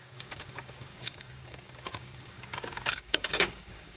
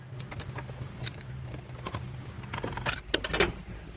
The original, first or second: second